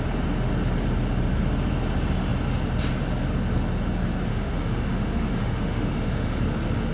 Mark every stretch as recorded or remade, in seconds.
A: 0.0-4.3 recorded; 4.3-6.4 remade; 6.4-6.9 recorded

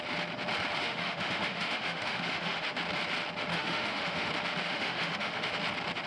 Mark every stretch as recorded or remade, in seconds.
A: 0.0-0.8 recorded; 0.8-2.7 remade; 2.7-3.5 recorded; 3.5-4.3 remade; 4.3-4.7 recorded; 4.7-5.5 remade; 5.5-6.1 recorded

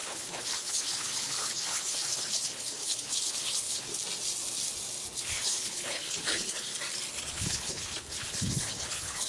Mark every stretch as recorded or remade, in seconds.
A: 0.0-3.9 remade; 3.9-5.2 recorded; 5.2-6.7 remade; 6.7-7.3 recorded; 7.3-9.3 remade

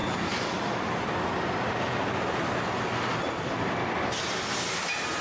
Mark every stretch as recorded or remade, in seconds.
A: 0.0-5.2 recorded